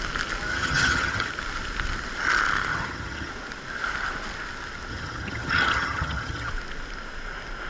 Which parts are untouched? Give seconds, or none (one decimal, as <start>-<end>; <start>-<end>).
0.0-0.5; 1.3-2.7; 3.3-4.9; 6.5-7.7